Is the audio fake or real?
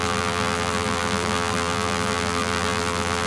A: fake